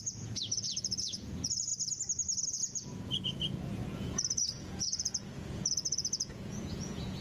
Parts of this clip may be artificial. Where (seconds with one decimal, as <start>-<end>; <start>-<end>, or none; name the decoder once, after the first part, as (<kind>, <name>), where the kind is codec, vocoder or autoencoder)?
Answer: 0.0-1.7 (vocoder, Vocos); 2.5-7.2